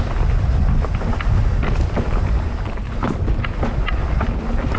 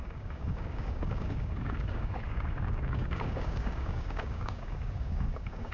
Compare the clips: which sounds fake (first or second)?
second